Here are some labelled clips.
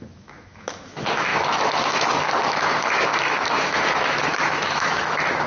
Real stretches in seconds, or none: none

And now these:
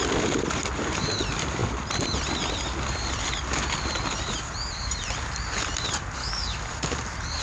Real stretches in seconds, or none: 0.0-6.2; 6.7-7.4

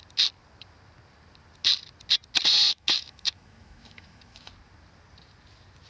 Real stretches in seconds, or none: 0.0-2.7; 4.5-5.9